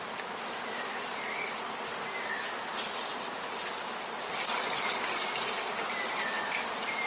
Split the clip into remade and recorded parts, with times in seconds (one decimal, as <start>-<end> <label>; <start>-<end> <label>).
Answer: 0.0-7.1 recorded